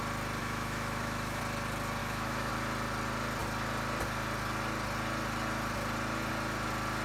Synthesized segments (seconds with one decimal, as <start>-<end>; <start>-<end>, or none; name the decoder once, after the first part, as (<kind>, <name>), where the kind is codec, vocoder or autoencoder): 0.4-1.4 (autoencoder, DAC-VAE); 2.0-2.5